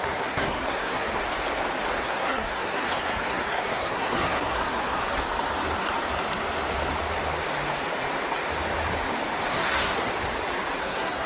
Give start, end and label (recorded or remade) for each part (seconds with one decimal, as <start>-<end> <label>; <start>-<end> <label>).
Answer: 0.0-1.2 remade; 1.2-2.0 recorded; 2.0-5.0 remade; 5.0-9.5 recorded; 9.5-10.1 remade; 10.1-10.8 recorded; 10.8-11.3 remade